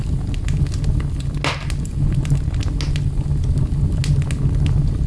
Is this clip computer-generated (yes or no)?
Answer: no